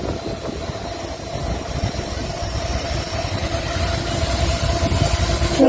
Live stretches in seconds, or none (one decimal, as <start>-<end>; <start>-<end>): 0.0-2.2; 3.9-5.7